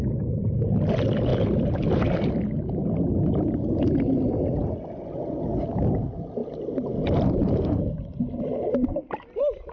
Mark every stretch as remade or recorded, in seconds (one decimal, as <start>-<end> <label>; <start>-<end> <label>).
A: 0.0-9.7 recorded